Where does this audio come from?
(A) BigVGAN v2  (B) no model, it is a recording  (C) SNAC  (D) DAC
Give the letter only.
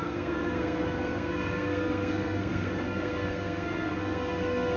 C